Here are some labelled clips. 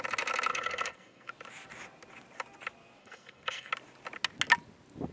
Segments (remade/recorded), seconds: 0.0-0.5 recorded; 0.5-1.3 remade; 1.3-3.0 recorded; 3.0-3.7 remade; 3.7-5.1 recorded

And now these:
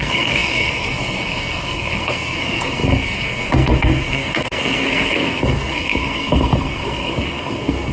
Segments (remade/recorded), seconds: 0.0-7.9 remade

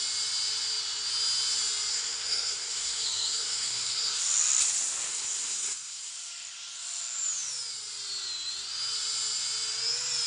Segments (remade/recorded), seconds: 0.0-1.9 recorded; 1.9-4.2 remade; 4.2-5.1 recorded; 5.1-6.1 remade; 6.1-10.3 recorded

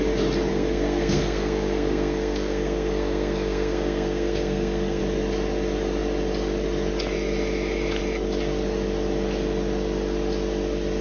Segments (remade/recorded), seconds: 0.0-0.5 recorded; 0.5-5.0 remade; 5.0-11.0 recorded

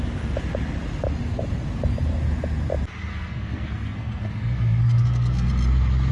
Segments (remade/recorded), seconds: 0.0-3.1 recorded; 3.1-5.5 remade; 5.5-6.1 recorded